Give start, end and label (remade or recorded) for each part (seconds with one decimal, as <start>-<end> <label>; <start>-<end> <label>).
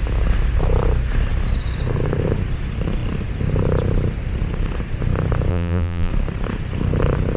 0.0-5.5 recorded; 5.5-6.1 remade; 6.1-7.4 recorded